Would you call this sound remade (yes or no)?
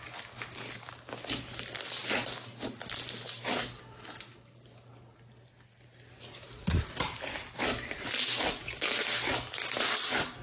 no